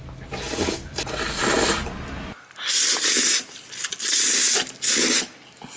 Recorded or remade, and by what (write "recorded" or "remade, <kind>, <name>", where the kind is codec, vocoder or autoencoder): recorded